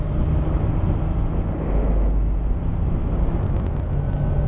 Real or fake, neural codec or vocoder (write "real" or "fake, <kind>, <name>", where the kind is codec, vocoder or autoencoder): real